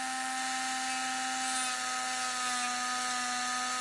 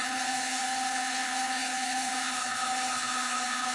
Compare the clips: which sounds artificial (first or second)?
second